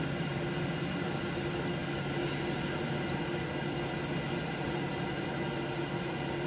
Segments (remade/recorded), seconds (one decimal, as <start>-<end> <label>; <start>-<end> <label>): 0.0-6.5 recorded

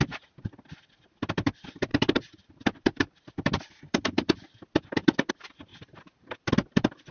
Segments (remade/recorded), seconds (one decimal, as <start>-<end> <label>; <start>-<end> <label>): 0.0-1.9 recorded; 1.9-5.3 remade; 5.3-5.7 recorded; 5.7-7.1 remade

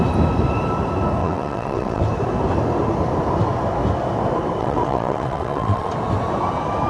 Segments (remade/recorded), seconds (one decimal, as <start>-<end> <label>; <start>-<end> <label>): 0.0-1.2 recorded; 1.2-2.0 remade; 2.0-4.6 recorded; 4.6-5.9 remade; 5.9-6.9 recorded

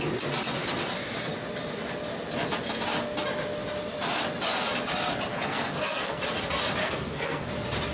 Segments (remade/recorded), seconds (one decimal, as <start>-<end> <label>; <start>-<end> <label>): 0.0-5.3 recorded; 5.3-6.2 remade; 6.2-6.8 recorded; 6.8-7.5 remade; 7.5-7.9 recorded

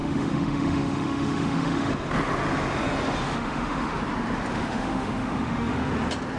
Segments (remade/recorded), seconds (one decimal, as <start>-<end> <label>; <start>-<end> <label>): 0.0-1.9 remade; 1.9-3.2 recorded; 3.2-4.0 remade; 4.0-4.5 recorded; 4.5-5.9 remade; 5.9-6.4 recorded